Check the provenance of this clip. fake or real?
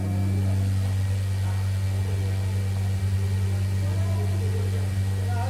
real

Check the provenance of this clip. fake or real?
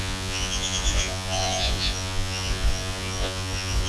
fake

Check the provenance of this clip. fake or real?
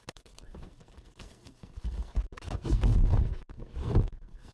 fake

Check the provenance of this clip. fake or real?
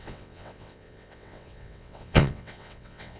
fake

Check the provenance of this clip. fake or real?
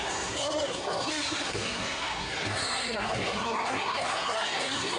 fake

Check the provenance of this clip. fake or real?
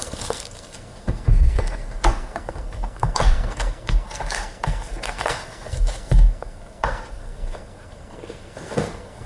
fake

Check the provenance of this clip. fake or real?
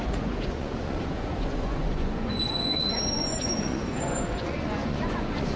fake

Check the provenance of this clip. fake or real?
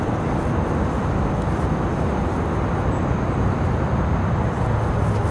real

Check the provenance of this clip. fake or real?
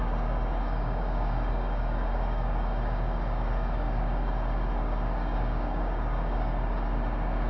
fake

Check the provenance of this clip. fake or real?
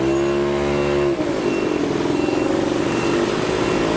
real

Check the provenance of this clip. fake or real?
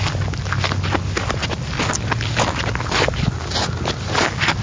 real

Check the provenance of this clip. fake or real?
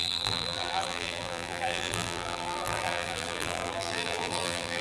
fake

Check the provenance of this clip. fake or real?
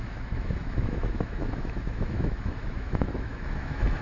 fake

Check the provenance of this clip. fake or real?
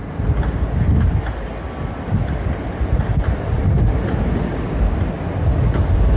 real